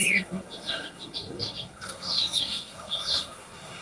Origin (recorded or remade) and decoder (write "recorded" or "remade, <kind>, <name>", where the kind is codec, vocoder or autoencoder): remade, codec, SNAC